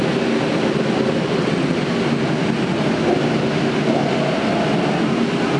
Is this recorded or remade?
recorded